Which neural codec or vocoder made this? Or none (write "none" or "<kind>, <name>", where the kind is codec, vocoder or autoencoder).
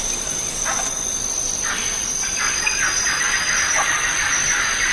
none